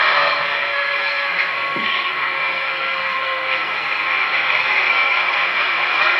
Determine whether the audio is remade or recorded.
remade